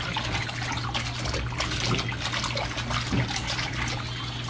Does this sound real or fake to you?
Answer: real